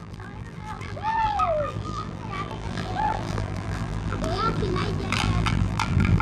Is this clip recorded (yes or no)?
no